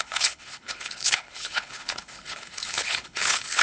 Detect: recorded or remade remade